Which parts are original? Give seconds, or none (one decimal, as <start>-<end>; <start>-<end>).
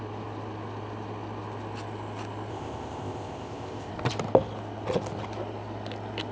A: 0.0-2.5; 3.9-6.3